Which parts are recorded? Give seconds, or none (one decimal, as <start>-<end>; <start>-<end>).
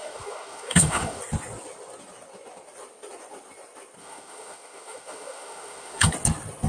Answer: 1.2-4.0; 6.1-6.7